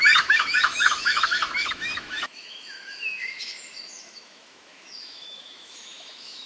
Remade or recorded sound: remade